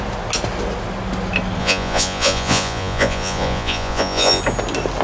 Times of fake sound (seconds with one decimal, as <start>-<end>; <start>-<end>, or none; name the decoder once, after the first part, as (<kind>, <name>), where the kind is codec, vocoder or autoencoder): 1.6-4.4 (vocoder, Vocos)